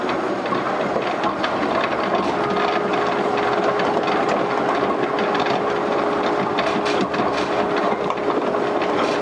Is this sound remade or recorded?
recorded